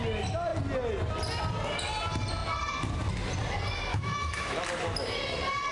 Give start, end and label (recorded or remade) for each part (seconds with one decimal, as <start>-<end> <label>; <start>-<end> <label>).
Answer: 0.0-3.9 recorded; 3.9-4.6 remade; 4.6-5.7 recorded